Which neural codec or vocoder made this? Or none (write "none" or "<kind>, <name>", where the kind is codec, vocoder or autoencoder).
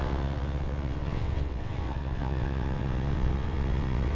vocoder, WaveNeXt